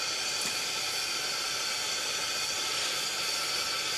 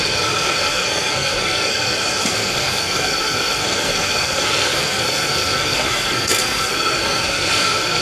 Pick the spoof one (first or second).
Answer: second